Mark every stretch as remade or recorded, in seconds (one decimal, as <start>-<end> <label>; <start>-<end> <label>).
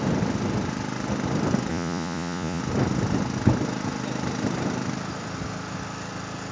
0.0-1.7 recorded; 1.7-2.6 remade; 2.6-6.5 recorded